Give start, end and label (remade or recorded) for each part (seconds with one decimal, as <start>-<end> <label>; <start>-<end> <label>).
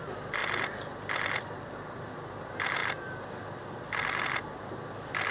0.0-5.3 recorded